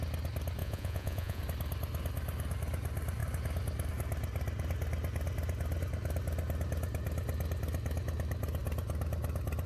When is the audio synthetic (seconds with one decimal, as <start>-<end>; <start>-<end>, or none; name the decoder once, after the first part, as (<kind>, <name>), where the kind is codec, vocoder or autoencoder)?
0.6-1.4 (vocoder, Vocos)